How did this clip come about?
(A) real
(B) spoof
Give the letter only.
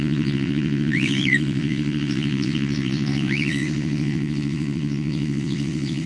B